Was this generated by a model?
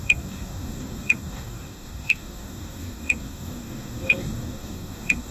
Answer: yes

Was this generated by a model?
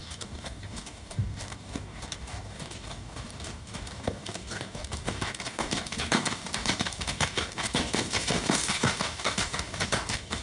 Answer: yes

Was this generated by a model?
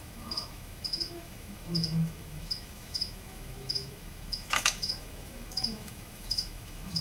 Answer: yes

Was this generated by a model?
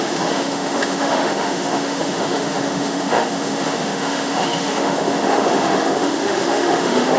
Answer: yes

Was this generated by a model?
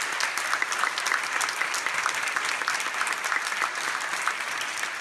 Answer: no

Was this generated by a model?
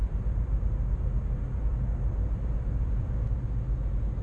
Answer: no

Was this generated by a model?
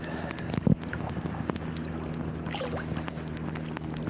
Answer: no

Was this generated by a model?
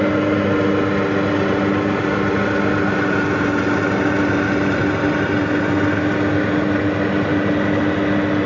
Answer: no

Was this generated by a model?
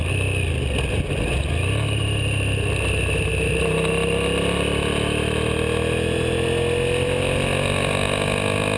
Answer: no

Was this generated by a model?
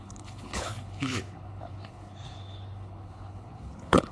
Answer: yes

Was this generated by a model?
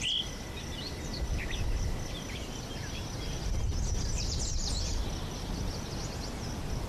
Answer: no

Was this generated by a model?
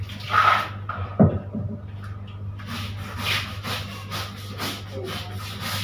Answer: no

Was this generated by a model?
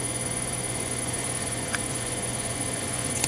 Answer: yes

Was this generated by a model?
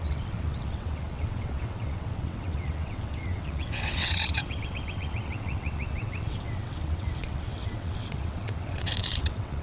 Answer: yes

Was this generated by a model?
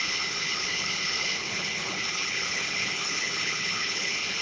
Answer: yes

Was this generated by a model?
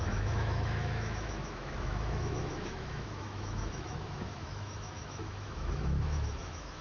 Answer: yes